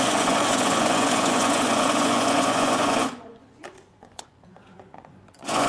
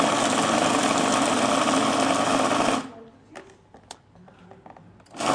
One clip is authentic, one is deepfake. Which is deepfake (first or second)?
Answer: first